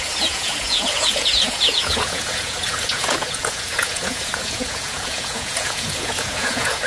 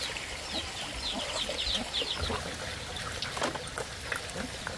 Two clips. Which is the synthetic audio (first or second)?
first